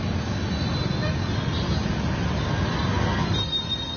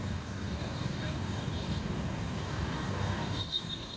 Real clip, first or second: first